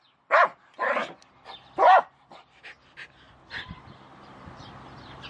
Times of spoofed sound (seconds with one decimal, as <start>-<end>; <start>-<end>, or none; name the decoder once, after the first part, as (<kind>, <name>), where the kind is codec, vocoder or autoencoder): none